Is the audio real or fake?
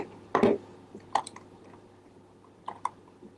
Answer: real